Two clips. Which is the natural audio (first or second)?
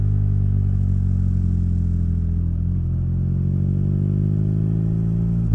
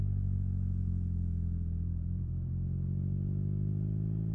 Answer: first